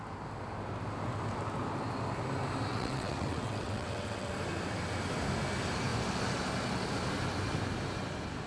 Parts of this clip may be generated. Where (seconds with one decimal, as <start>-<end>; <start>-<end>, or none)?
2.7-4.3